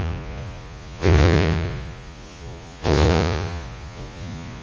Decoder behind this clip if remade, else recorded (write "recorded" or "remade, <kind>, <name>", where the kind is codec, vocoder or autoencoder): remade, vocoder, Vocos